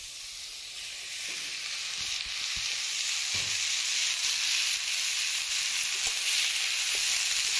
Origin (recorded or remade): recorded